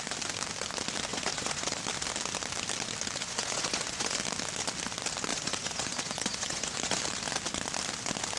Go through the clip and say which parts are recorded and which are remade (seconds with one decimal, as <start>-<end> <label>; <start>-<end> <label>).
0.0-1.1 recorded; 1.1-1.8 remade; 1.8-3.2 recorded; 3.2-4.2 remade; 4.2-5.3 recorded; 5.3-7.0 remade; 7.0-8.4 recorded